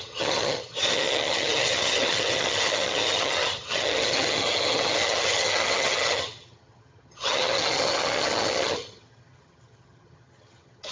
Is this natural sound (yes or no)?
no